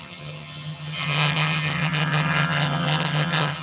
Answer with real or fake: fake